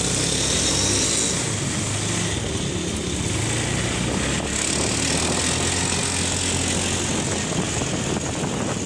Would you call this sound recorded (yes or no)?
yes